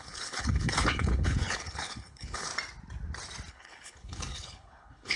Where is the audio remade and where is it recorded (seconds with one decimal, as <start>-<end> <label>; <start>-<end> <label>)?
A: 0.0-2.5 remade; 2.5-3.5 recorded; 3.5-5.2 remade